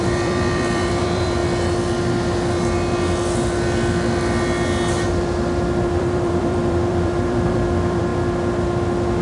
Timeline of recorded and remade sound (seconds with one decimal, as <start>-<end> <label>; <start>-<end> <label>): 0.0-1.4 remade; 1.4-5.8 recorded; 5.8-8.1 remade; 8.1-9.2 recorded